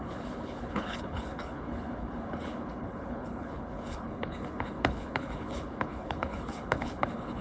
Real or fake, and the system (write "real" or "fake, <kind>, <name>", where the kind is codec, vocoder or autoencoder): fake, codec, HILCodec